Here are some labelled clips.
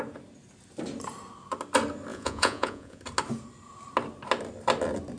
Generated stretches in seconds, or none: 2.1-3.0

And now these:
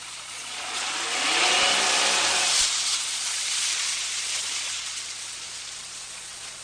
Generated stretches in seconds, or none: 0.0-0.8; 2.6-6.6

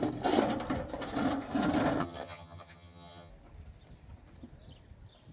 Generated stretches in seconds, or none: 2.0-3.3

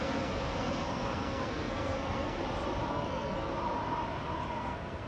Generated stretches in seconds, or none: 0.0-2.4; 2.9-3.5; 4.5-5.1

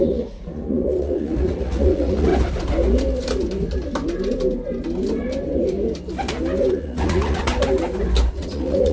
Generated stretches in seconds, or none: 0.0-2.3; 6.7-7.5; 8.3-8.9